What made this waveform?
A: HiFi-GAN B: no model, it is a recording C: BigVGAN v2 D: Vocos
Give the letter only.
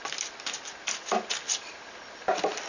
B